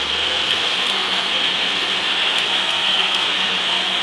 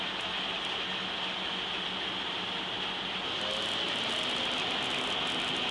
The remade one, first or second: first